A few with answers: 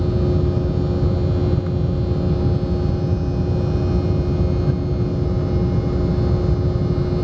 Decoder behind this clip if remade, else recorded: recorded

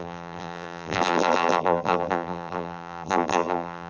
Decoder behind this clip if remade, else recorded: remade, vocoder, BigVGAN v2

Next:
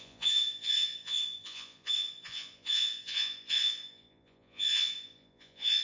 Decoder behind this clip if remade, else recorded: remade, vocoder, Vocos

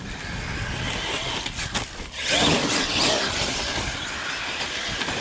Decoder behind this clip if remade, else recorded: recorded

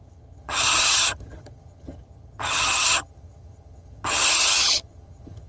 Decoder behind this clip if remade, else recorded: remade, vocoder, HiFi-GAN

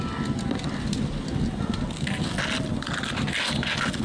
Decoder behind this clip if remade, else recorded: recorded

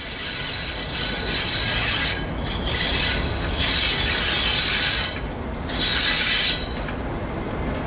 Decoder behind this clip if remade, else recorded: recorded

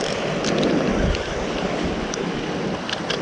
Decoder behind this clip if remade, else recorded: recorded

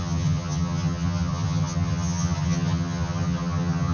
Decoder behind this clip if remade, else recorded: remade, vocoder, HiFi-GAN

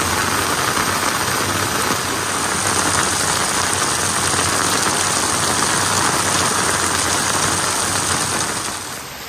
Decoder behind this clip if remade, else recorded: recorded